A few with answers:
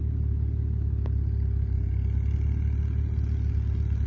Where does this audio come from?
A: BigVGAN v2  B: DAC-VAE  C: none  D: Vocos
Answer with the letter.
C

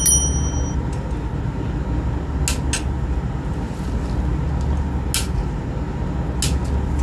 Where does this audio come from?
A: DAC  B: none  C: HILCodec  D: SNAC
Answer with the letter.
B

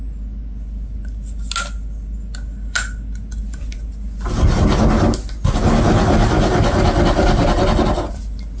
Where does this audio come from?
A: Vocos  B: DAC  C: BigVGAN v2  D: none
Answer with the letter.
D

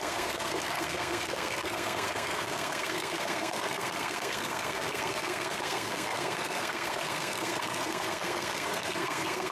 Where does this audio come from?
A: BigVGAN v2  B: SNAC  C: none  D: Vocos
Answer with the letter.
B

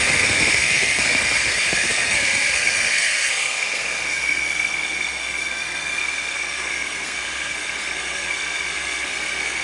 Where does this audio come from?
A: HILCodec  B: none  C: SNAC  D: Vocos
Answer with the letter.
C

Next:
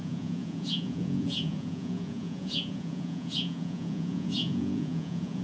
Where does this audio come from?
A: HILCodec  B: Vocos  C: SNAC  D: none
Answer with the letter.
B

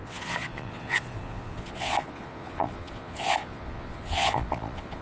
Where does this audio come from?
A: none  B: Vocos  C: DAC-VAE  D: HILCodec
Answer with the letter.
B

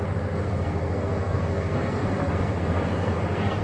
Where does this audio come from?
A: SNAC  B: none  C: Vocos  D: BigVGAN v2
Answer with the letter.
A